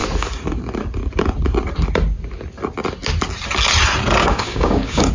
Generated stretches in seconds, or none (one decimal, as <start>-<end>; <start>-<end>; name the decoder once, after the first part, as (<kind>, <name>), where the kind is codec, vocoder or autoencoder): 4.2-5.1 (codec, DAC)